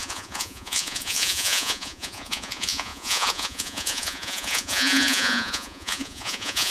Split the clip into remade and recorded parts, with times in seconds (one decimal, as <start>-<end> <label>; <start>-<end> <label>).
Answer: 0.0-6.7 remade